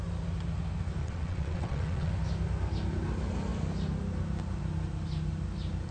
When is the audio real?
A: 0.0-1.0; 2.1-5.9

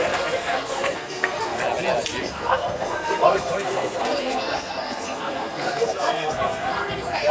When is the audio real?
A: 1.6-2.2